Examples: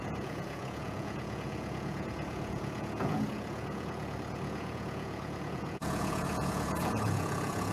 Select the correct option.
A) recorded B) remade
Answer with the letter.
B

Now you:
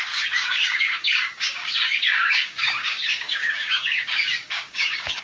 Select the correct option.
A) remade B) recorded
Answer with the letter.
A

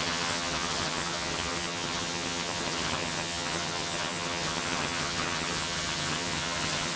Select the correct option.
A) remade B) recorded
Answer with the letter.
A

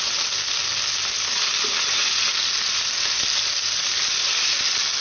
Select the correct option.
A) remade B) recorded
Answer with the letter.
B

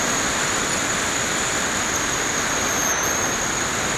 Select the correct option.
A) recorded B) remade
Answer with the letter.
A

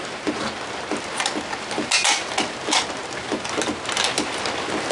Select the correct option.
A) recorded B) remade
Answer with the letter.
A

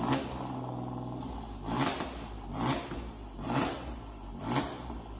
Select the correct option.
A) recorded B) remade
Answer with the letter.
A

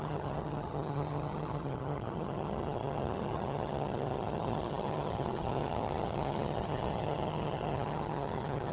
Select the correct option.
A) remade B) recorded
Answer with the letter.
A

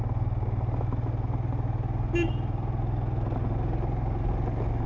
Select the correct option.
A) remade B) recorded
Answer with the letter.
B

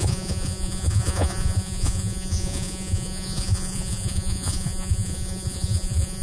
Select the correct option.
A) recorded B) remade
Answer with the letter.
B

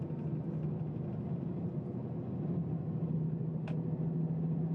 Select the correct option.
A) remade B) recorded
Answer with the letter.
B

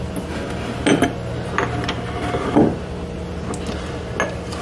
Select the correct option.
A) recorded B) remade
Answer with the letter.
A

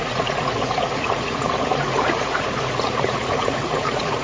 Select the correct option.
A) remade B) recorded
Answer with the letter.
A